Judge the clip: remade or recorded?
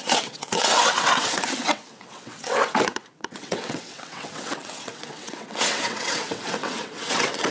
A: remade